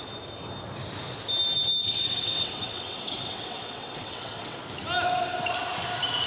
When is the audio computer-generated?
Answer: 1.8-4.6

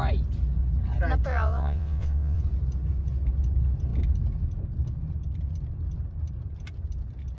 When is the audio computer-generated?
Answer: 1.3-2.4

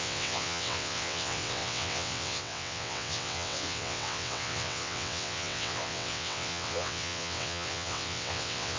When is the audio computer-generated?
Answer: 0.0-8.8

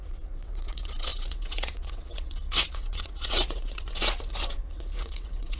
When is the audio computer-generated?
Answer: 0.0-5.6

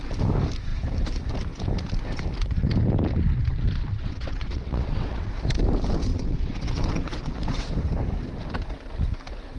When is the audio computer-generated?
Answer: 3.9-5.3; 6.1-7.7

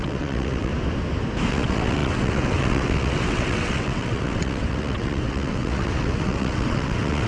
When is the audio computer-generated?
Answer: 0.0-0.7; 1.5-7.3

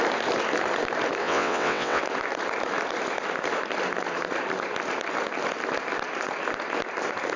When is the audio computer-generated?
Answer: 1.2-2.0